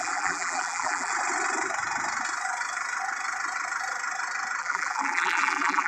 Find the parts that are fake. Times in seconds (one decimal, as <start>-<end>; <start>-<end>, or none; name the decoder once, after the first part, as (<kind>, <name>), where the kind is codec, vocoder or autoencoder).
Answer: 0.0-1.1 (vocoder, BigVGAN v2); 4.6-5.9